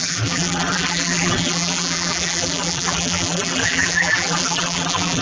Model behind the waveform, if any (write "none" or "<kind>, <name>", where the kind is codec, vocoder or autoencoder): vocoder, BigVGAN v2